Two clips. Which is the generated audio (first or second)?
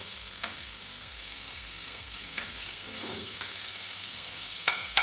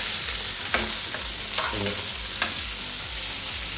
first